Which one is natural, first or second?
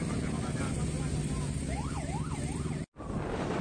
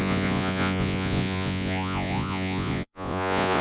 first